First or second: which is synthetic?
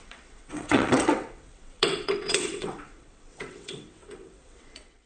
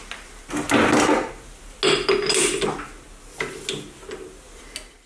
first